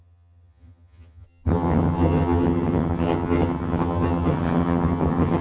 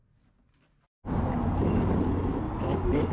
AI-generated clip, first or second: first